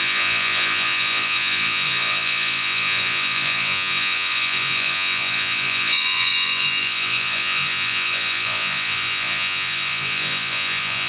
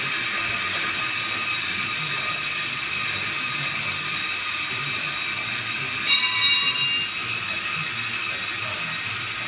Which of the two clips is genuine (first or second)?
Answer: second